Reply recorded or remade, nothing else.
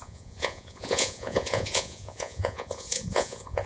remade